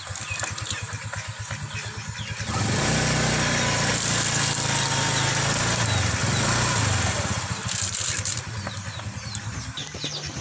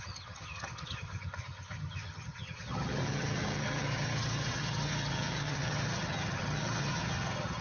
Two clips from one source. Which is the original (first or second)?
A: first